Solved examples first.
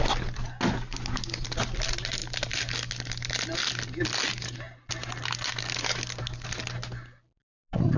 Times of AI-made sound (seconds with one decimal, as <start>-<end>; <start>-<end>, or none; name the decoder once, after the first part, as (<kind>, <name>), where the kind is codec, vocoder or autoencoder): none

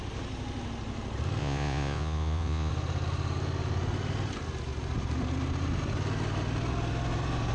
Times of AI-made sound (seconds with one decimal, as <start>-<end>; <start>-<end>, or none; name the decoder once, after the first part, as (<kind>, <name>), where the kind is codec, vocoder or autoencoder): 1.4-2.7 (vocoder, Vocos)

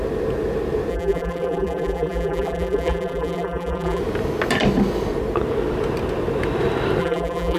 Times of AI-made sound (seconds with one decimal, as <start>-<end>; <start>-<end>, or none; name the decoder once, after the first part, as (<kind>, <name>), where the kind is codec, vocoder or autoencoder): 0.9-4.0 (vocoder, BigVGAN v2); 7.0-7.6

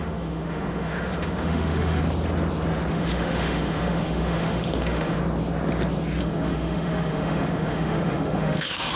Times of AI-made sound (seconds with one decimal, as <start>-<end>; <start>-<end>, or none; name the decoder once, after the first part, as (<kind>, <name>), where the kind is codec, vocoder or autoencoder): 0.0-2.0 (autoencoder, DAC-VAE); 2.9-5.2; 6.2-9.0